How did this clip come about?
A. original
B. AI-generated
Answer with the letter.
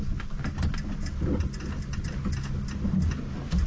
A